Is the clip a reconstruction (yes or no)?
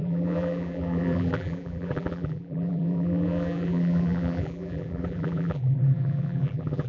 yes